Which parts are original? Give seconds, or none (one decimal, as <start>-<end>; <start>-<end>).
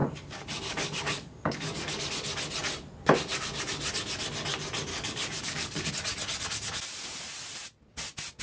2.1-4.9; 5.9-8.4